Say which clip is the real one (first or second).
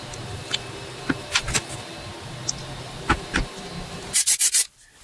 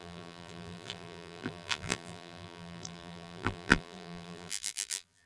first